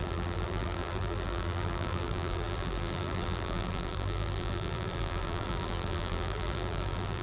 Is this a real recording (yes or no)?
no